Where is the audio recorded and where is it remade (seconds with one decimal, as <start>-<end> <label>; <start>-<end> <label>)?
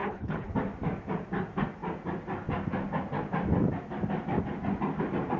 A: 0.0-0.5 remade; 0.5-5.4 recorded